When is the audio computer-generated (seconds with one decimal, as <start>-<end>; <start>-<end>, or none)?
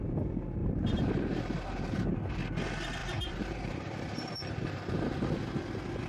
0.6-1.4; 3.0-5.0